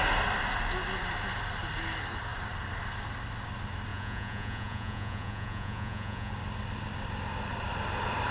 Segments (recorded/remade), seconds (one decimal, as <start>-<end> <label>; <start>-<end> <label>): 0.0-3.9 recorded; 3.9-6.3 remade; 6.3-8.3 recorded